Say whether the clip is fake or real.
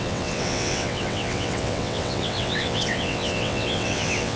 fake